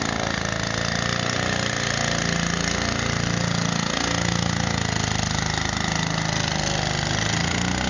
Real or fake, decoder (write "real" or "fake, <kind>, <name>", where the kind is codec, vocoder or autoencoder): real